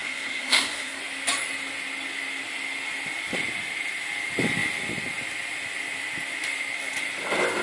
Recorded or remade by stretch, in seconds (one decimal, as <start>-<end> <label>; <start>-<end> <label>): 0.0-1.0 remade; 1.0-7.6 recorded